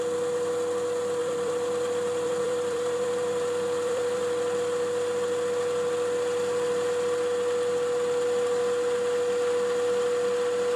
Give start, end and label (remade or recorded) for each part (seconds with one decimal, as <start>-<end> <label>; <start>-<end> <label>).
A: 0.0-1.2 recorded; 1.2-4.2 remade; 4.2-10.8 recorded